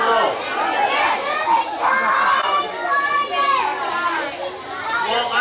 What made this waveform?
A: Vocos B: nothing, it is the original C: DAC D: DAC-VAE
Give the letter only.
B